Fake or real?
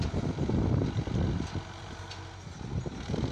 real